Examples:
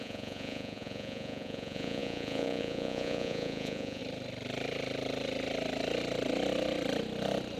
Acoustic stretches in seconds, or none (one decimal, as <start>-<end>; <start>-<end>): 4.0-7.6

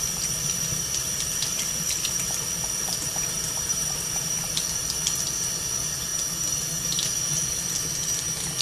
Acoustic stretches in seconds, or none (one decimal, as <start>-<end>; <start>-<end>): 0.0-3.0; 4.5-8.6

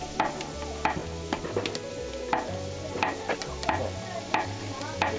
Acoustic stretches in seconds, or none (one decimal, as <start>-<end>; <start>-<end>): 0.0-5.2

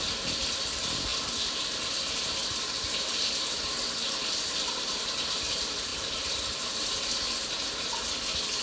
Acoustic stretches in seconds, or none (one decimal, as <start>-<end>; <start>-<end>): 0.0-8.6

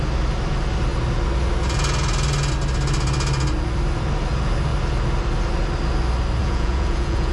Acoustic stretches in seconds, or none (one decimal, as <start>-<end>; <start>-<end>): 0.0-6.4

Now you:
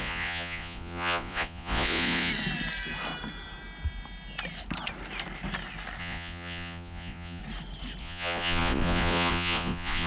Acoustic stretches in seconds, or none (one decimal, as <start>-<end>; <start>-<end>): 2.3-6.0; 7.4-8.0